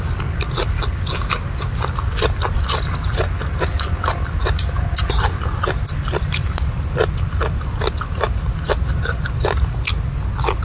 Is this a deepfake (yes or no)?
no